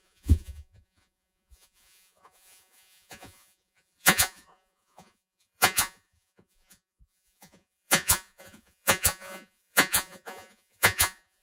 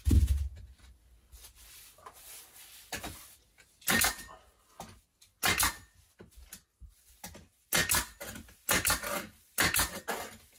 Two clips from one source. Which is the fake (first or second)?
first